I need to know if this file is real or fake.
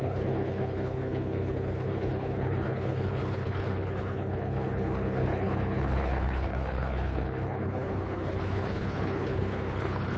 fake